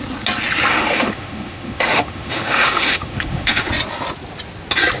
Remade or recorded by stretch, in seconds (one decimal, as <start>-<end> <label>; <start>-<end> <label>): 0.0-0.7 recorded; 0.7-3.7 remade; 3.7-5.0 recorded